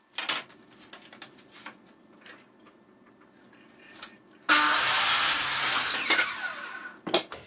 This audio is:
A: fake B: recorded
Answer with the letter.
B